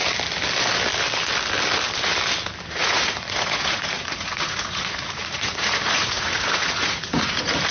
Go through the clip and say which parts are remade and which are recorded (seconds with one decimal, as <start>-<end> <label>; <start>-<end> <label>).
0.0-2.8 recorded; 2.8-7.7 remade

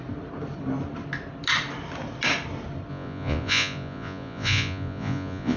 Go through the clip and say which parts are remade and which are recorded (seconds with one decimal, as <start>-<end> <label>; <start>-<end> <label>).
0.0-2.9 recorded; 2.9-5.6 remade

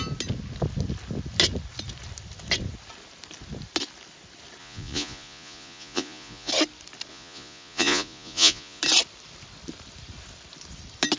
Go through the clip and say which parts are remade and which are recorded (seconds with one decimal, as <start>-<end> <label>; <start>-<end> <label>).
0.0-4.6 recorded; 4.6-6.5 remade; 6.5-7.1 recorded; 7.1-8.8 remade; 8.8-11.2 recorded

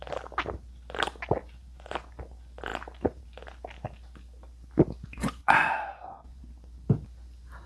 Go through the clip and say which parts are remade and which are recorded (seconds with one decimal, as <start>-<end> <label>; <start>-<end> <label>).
0.0-1.4 recorded; 1.4-2.2 remade; 2.2-5.2 recorded; 5.2-6.4 remade; 6.4-7.7 recorded